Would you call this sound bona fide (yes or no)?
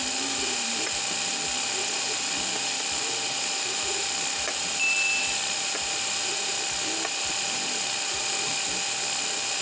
yes